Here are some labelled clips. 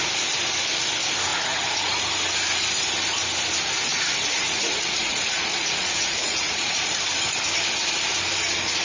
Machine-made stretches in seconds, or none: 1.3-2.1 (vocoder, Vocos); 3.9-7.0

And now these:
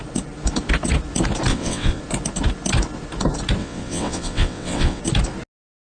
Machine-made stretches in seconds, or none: 1.5-2.0 (vocoder, WaveNeXt); 3.6-5.0

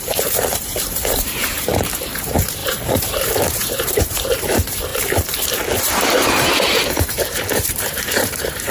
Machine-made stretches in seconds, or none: 0.0-4.9 (vocoder, BigVGAN v2); 5.8-8.7

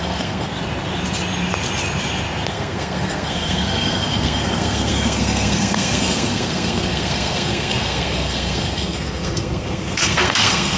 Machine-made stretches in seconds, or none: 0.0-0.5 (codec, SNAC); 2.5-10.8